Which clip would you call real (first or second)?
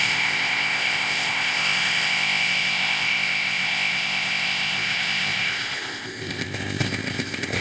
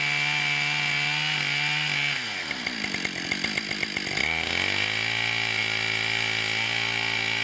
second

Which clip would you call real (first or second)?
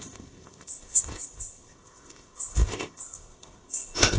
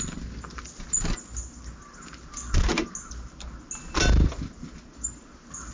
second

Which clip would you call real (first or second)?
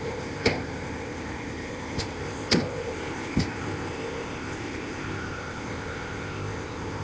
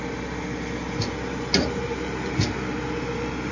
second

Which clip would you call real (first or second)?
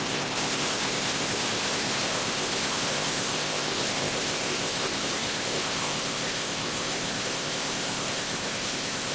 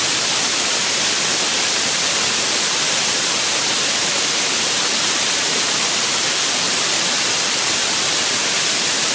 second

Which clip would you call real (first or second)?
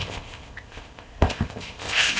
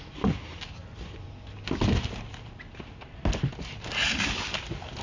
second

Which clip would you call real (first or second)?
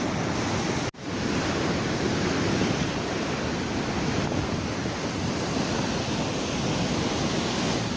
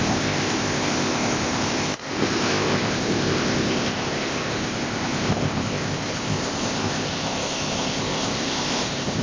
first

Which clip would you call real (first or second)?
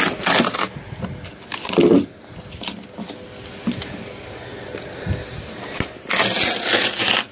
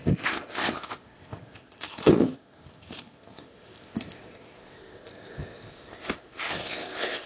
first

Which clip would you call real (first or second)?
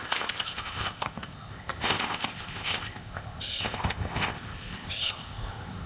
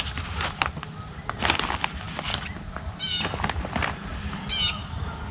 second